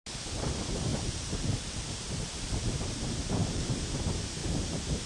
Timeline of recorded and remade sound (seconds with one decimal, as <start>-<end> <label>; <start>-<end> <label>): 0.0-0.9 recorded; 0.9-2.9 remade; 2.9-3.4 recorded; 3.4-4.0 remade; 4.0-4.4 recorded; 4.4-5.1 remade